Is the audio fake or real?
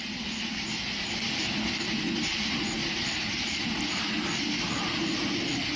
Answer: real